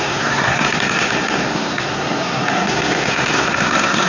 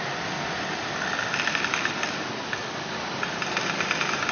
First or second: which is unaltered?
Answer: second